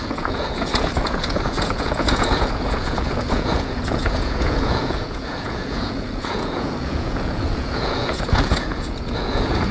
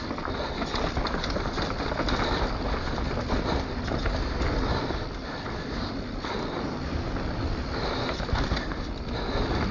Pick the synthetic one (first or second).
first